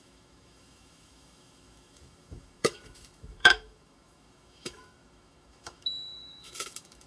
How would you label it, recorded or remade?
remade